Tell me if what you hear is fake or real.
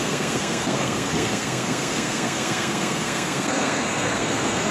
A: fake